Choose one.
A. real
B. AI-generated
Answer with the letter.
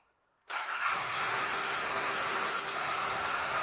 B